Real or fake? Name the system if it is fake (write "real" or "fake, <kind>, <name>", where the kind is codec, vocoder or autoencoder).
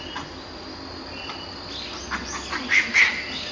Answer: real